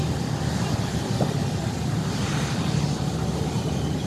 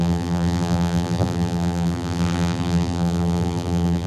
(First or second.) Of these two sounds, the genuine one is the first